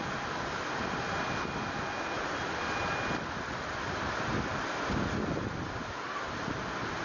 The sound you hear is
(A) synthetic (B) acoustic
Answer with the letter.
B